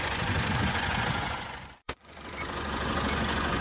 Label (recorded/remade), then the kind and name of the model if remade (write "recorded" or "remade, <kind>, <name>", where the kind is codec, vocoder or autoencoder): remade, vocoder, Vocos